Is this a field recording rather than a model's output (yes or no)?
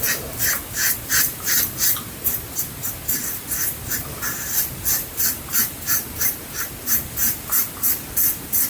no